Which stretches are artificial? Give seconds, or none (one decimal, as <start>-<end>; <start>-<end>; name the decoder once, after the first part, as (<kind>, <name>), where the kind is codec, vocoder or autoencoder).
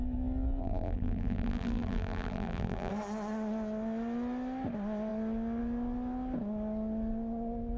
0.6-2.9 (vocoder, BigVGAN v2)